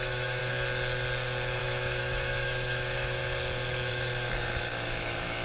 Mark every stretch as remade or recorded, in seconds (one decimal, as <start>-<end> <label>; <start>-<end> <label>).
0.0-0.4 remade; 0.4-1.6 recorded; 1.6-3.2 remade; 3.2-3.9 recorded; 3.9-5.4 remade